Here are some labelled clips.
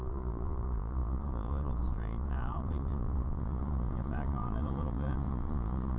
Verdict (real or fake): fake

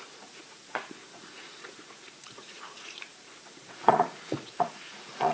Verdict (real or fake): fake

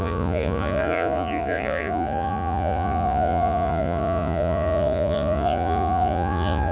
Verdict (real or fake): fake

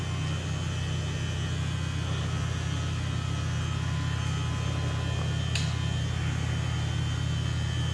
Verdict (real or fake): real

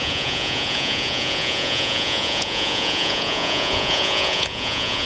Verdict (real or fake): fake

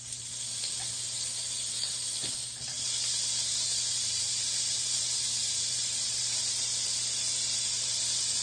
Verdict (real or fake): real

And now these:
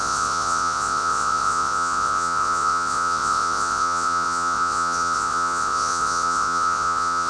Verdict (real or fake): fake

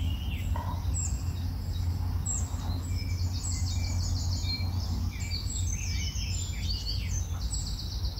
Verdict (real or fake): real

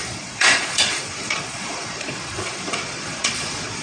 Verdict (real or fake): fake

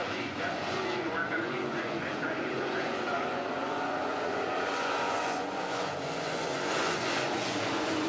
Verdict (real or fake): fake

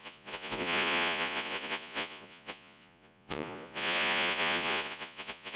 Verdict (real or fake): fake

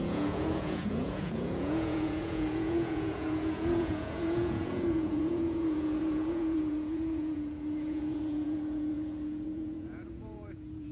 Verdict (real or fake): fake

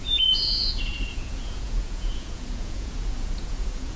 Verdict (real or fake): fake